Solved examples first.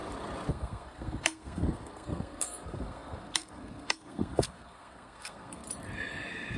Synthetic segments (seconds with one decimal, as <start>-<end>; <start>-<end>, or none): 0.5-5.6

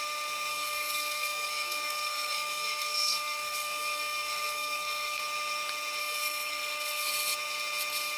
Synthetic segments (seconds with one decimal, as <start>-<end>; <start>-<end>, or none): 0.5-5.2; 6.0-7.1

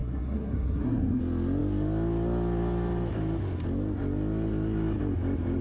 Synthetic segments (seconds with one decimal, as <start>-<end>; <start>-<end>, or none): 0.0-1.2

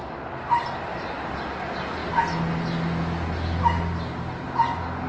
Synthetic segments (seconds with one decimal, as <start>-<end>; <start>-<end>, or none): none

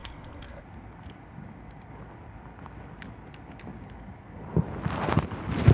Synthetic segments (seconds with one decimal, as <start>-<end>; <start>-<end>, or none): 0.0-0.6

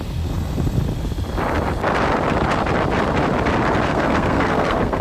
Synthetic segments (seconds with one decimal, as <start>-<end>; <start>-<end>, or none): 3.9-5.0

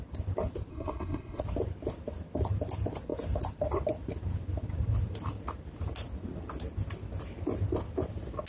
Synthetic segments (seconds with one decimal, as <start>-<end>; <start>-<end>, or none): 0.7-1.4